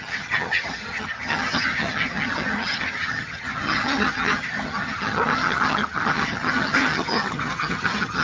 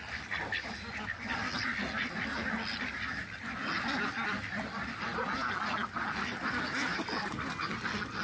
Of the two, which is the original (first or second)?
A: second